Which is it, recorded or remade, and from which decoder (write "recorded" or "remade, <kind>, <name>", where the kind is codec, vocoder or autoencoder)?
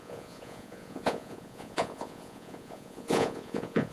remade, vocoder, Vocos